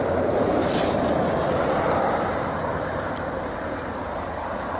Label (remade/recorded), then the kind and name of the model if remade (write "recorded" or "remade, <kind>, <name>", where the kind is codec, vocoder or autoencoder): remade, vocoder, BigVGAN v2